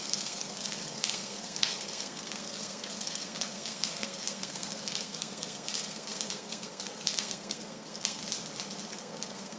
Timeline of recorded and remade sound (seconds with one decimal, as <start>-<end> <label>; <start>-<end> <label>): 0.0-8.2 remade; 8.2-8.9 recorded; 8.9-9.6 remade